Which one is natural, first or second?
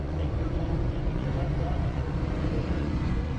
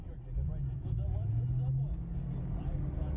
second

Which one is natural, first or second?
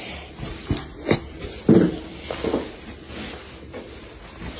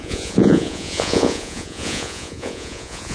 first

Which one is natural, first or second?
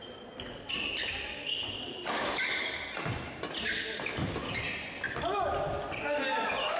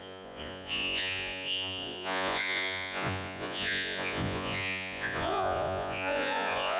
first